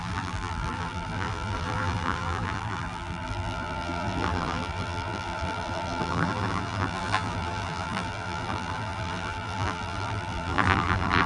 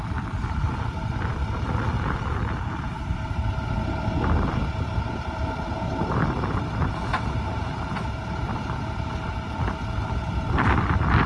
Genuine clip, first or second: second